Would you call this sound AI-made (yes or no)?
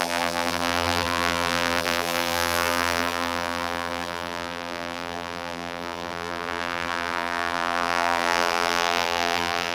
yes